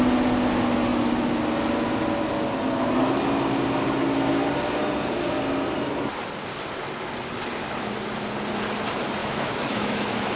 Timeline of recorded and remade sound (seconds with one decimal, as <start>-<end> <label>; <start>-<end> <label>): 0.0-9.2 recorded; 9.2-10.4 remade